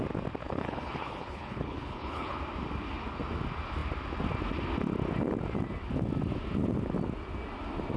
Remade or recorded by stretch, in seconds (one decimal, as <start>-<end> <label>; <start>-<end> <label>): 0.0-0.4 recorded; 0.4-2.4 remade; 2.4-8.0 recorded